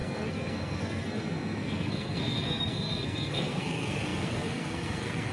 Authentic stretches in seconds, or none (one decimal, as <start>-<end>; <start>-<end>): none